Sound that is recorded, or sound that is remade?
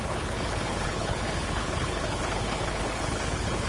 remade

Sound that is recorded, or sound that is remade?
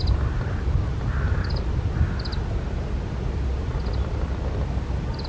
recorded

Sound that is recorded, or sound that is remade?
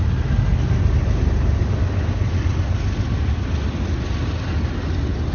recorded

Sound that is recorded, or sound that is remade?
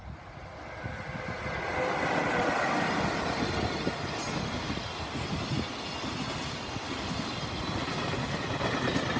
recorded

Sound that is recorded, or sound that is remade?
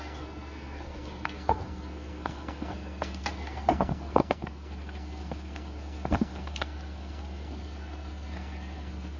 remade